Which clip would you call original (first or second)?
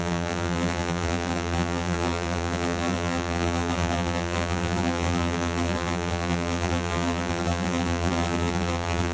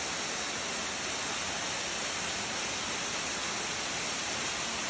second